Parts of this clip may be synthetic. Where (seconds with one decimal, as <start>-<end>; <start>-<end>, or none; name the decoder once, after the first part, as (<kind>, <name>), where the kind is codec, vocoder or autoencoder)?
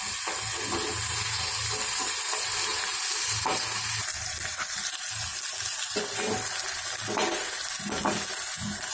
none